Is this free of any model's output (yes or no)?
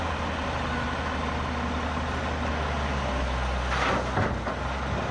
yes